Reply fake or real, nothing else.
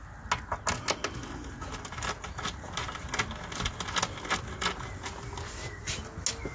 real